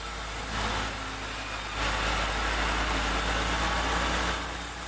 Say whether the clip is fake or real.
real